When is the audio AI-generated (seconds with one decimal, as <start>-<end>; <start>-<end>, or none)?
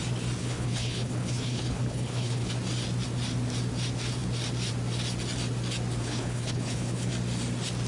0.4-2.5; 6.0-7.1